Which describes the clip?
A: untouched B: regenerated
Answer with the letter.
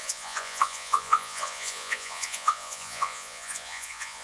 B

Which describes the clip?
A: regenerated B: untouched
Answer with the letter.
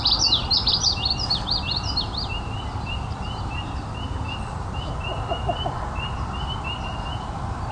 B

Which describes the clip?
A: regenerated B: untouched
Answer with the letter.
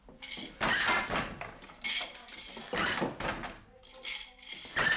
B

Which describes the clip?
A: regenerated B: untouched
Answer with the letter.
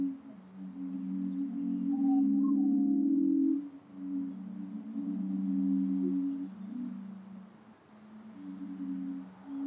B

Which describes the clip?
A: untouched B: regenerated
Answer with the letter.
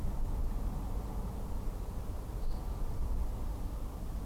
A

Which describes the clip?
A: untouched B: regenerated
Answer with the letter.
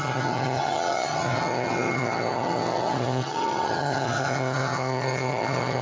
B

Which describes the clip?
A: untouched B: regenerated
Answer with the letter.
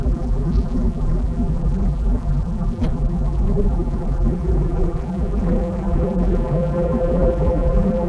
B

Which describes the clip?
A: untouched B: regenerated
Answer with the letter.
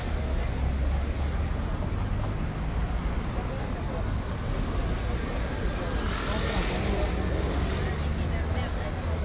A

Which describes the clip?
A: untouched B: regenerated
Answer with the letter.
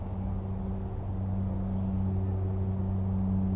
A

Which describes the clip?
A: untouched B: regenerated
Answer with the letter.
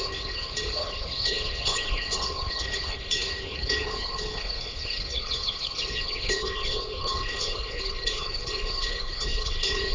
B